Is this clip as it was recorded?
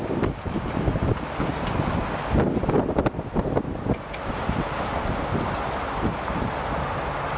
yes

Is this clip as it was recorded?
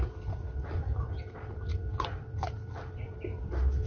yes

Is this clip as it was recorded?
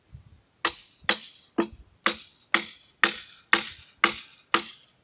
yes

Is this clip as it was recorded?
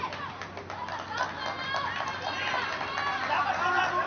yes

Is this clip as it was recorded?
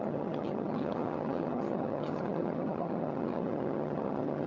no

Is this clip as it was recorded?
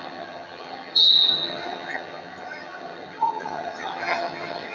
no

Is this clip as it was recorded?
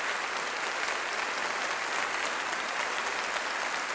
yes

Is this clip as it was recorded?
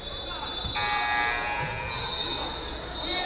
yes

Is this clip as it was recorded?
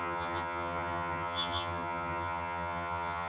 no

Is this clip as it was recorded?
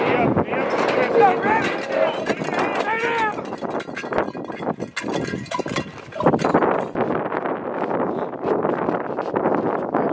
yes